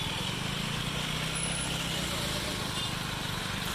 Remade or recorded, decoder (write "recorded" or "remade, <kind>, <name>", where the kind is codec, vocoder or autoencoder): recorded